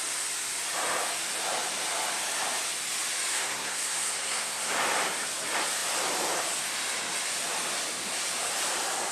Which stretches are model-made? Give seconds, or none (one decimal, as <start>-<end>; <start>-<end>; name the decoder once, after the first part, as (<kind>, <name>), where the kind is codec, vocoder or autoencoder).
3.3-4.7 (codec, SNAC)